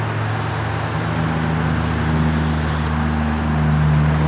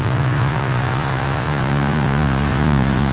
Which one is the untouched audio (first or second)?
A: first